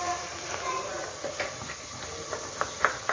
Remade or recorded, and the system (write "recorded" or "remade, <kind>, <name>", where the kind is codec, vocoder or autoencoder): recorded